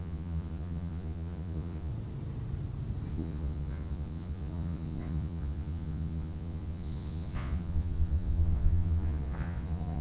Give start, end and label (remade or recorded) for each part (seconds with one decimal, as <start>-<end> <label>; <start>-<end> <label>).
0.0-1.9 remade; 1.9-3.1 recorded; 3.1-10.0 remade